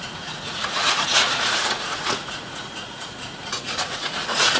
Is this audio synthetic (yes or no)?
yes